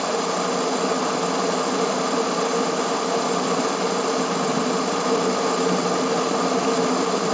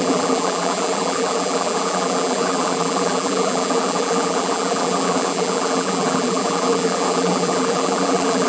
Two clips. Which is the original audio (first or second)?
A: first